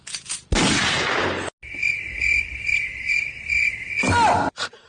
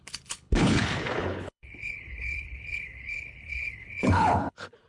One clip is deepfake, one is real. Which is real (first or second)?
first